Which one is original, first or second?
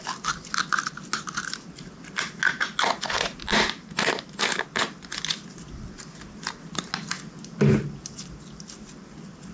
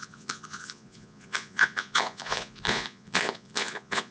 first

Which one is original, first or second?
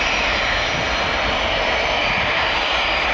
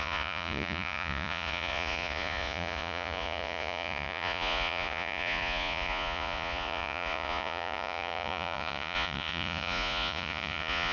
first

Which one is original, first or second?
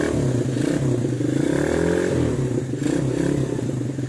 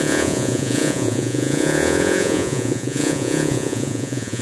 first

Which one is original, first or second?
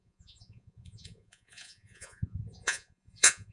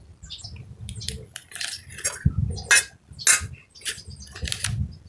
second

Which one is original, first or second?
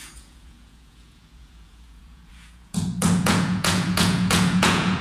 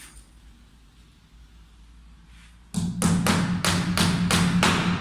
second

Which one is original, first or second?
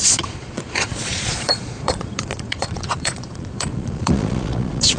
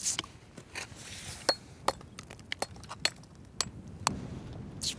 second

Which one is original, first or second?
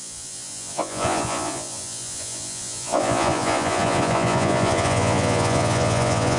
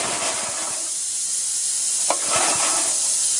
second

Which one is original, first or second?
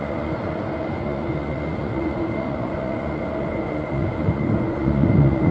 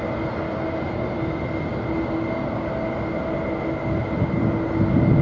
second